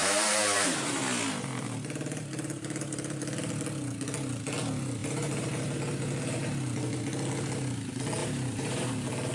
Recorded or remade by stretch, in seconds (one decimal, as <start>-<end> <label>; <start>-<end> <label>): 0.0-3.5 remade; 3.5-5.0 recorded; 5.0-5.6 remade; 5.6-8.2 recorded; 8.2-8.9 remade; 8.9-9.3 recorded